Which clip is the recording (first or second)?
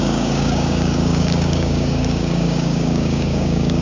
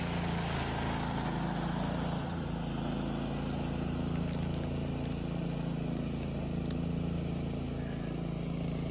second